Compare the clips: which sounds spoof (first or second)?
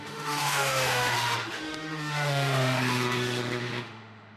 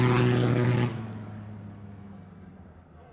first